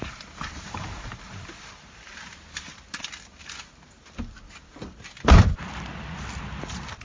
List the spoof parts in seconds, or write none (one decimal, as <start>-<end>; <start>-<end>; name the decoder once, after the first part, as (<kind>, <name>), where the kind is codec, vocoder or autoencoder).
none